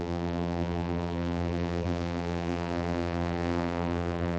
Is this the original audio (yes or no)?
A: no